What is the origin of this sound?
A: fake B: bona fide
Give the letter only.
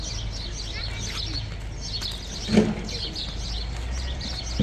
B